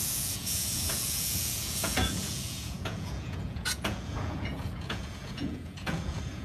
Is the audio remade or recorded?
remade